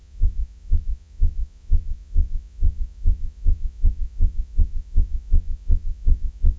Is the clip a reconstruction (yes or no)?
yes